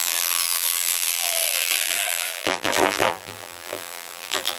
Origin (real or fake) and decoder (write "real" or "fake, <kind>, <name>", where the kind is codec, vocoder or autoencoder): fake, vocoder, BigVGAN v2